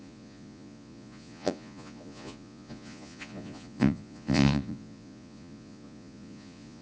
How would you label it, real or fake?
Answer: fake